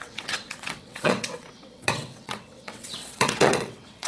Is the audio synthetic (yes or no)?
yes